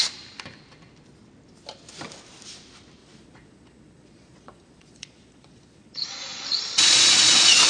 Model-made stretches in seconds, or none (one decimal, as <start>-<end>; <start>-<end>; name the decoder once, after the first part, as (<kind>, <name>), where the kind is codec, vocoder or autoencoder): 3.0-7.7 (vocoder, Vocos)